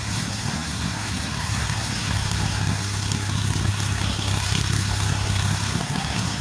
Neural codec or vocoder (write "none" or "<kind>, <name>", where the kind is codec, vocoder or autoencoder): codec, SNAC